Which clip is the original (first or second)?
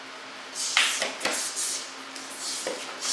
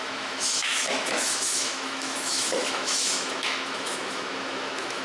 first